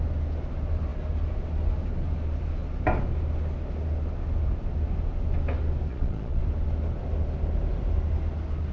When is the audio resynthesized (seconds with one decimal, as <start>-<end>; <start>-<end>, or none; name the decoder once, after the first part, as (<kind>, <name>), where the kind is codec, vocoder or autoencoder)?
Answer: 5.9-6.4 (vocoder, Vocos)